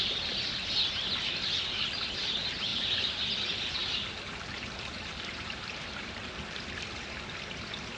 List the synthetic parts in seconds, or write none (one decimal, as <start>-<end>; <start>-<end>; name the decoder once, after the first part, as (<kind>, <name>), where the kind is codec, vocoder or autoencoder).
2.7-3.2 (vocoder, BigVGAN v2); 3.8-6.2